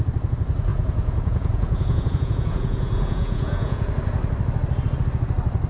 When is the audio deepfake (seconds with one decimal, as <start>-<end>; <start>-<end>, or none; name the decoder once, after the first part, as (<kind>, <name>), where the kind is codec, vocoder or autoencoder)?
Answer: 0.7-3.9 (vocoder, Vocos)